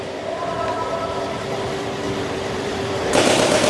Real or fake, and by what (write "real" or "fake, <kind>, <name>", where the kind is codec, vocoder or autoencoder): fake, vocoder, BigVGAN v2